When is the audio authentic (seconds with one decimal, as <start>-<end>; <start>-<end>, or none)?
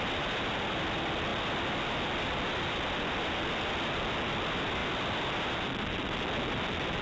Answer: 0.0-7.0